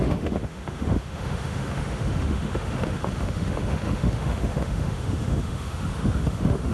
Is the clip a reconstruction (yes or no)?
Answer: yes